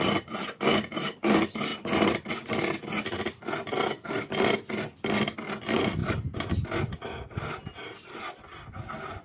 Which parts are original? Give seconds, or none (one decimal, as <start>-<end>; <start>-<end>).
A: 0.0-9.2

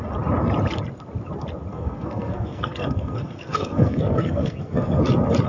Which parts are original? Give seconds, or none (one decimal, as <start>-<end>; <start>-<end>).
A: 0.0-1.7; 5.0-5.5

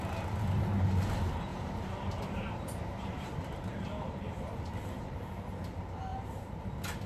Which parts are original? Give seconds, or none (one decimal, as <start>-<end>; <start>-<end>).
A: 0.0-1.5; 5.4-6.1; 6.6-7.1

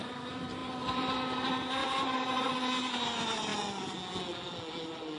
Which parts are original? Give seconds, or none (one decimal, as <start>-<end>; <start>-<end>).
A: 0.0-0.6; 1.2-1.8; 2.5-5.2